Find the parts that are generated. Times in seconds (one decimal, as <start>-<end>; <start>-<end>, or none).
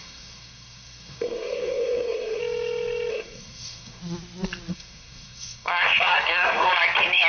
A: 0.0-2.4; 3.1-4.0; 4.7-6.7